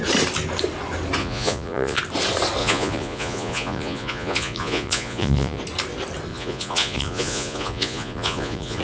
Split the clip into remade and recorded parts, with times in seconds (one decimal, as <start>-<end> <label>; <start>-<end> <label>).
0.0-1.2 recorded; 1.2-2.0 remade; 2.0-2.6 recorded; 2.6-5.6 remade; 5.6-6.3 recorded; 6.3-8.8 remade